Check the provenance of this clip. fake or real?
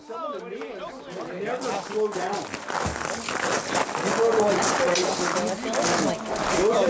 real